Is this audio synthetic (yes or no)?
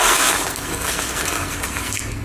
yes